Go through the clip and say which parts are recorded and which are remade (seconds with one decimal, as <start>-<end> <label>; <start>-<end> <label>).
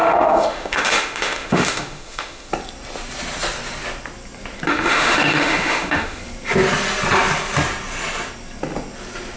0.0-2.5 remade; 2.5-4.7 recorded; 4.7-6.2 remade; 6.2-9.4 recorded